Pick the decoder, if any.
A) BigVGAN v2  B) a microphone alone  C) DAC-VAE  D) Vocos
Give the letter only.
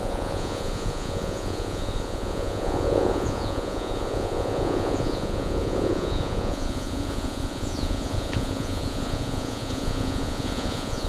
D